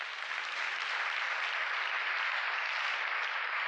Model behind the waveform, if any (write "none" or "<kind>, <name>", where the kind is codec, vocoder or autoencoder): none